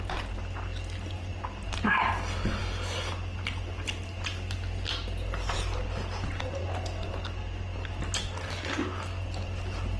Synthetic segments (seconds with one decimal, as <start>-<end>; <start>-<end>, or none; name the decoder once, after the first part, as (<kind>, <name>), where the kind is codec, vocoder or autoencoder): none